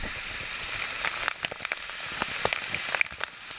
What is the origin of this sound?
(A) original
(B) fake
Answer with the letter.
A